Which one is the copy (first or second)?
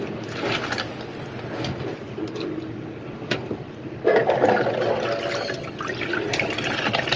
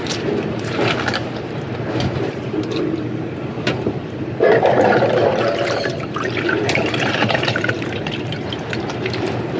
second